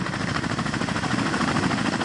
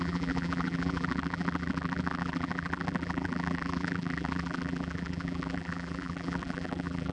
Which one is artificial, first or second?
second